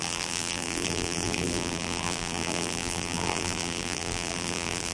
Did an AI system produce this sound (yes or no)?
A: yes